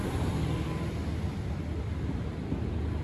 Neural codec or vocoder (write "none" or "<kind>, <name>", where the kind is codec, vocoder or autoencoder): none